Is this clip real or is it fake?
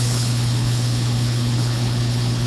fake